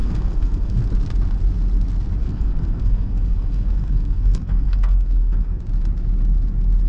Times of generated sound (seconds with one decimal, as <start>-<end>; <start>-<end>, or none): 0.0-0.8; 2.2-5.6